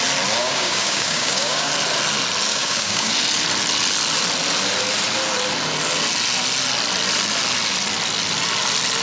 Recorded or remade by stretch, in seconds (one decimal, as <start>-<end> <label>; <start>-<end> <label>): 0.0-0.4 recorded; 0.4-1.7 remade; 1.7-2.5 recorded; 2.5-3.1 remade; 3.1-9.0 recorded